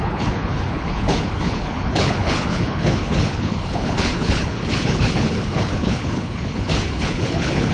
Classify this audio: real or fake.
fake